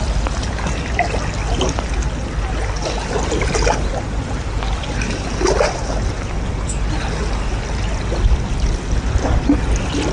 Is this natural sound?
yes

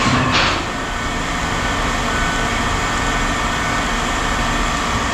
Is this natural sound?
yes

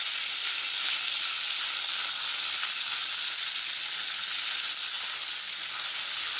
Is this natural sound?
yes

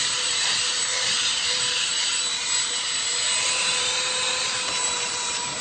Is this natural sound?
no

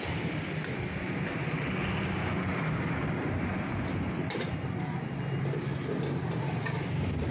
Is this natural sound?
yes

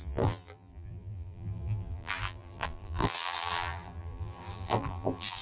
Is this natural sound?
no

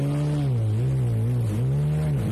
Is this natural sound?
yes